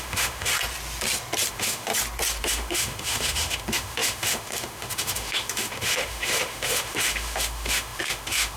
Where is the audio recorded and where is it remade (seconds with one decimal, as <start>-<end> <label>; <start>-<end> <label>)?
0.0-0.5 remade; 0.5-1.5 recorded; 1.5-1.9 remade; 1.9-2.4 recorded; 2.4-8.6 remade